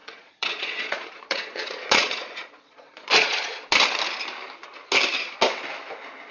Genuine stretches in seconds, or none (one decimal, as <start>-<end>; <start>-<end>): 3.6-6.3